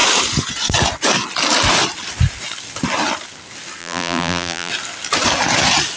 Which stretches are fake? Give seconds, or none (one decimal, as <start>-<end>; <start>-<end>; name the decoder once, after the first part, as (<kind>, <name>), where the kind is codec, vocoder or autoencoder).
3.8-4.7 (vocoder, BigVGAN v2)